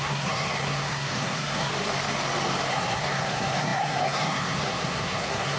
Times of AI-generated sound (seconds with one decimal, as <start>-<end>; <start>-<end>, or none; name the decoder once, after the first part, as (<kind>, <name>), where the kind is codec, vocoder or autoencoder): 0.0-1.7 (codec, SNAC); 2.7-5.6